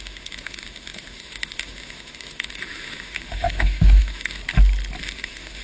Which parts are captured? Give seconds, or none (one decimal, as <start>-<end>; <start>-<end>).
4.4-5.0